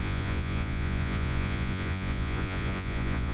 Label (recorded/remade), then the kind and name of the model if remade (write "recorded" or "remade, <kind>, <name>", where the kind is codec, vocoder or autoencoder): remade, vocoder, Vocos